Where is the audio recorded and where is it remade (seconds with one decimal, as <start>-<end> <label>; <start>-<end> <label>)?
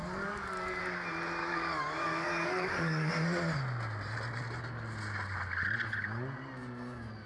0.0-0.8 remade; 0.8-1.4 recorded; 1.4-3.1 remade; 3.1-7.3 recorded